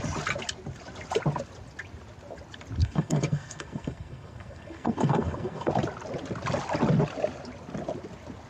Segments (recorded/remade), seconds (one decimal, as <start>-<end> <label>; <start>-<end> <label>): 0.0-2.8 recorded; 2.8-5.7 remade; 5.7-8.5 recorded

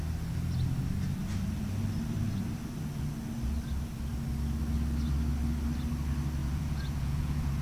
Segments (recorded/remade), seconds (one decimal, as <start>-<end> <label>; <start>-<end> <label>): 0.0-6.4 recorded; 6.4-7.6 remade

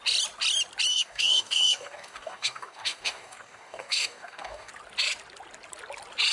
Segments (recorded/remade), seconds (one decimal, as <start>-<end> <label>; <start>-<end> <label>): 0.0-0.9 recorded; 0.9-4.7 remade; 4.7-6.3 recorded

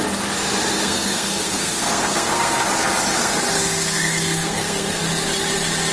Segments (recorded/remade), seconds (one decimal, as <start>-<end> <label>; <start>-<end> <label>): 0.0-0.8 recorded; 0.8-2.7 remade; 2.7-3.2 recorded; 3.2-5.0 remade; 5.0-5.9 recorded